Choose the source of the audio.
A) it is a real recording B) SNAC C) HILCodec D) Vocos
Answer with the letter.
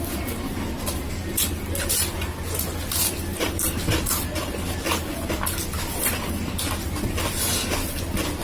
A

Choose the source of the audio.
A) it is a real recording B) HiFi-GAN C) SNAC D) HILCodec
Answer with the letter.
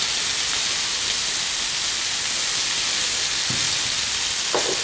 A